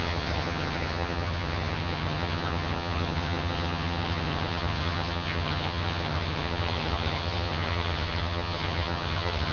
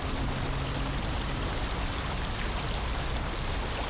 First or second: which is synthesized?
first